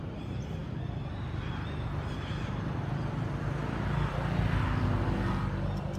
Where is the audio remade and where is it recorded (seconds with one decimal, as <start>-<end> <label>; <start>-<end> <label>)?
0.0-6.0 recorded